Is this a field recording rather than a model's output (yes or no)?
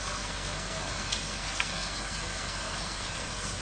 no